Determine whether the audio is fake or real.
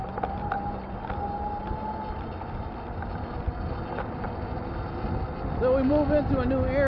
real